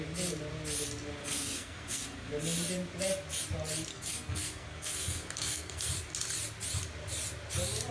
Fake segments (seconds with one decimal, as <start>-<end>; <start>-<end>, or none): 1.2-2.3; 3.9-5.9